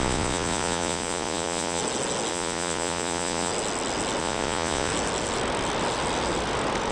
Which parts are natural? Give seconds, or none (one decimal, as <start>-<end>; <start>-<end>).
1.8-2.3; 3.5-4.2; 4.9-6.9